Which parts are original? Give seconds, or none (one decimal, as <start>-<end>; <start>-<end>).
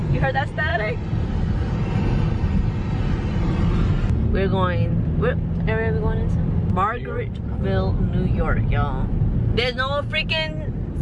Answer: 0.0-11.0